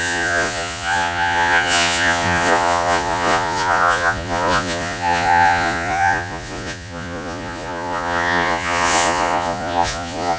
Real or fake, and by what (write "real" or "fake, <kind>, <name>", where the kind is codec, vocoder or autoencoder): fake, vocoder, Vocos